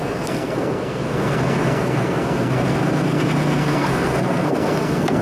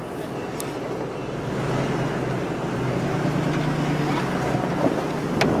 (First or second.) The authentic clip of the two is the second